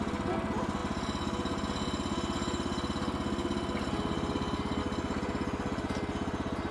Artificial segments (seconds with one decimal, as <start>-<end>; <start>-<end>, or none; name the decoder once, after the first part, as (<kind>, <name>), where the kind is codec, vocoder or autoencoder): none